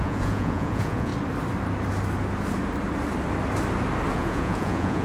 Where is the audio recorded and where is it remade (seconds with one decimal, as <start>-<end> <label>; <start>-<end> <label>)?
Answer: 0.0-1.1 remade; 1.1-4.1 recorded; 4.1-5.0 remade